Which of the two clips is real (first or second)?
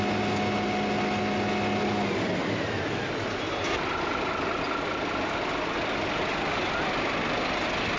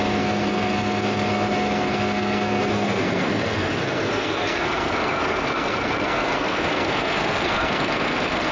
first